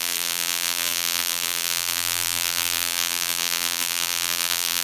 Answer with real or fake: fake